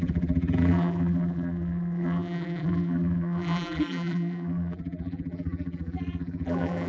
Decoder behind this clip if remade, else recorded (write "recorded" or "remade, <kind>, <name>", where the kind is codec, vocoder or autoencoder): remade, vocoder, BigVGAN v2